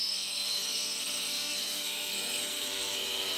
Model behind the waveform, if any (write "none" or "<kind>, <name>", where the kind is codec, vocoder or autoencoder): codec, SNAC